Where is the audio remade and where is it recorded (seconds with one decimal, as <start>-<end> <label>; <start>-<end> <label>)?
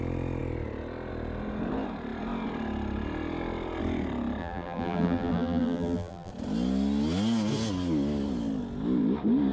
0.0-4.4 recorded; 4.4-6.3 remade; 6.3-9.5 recorded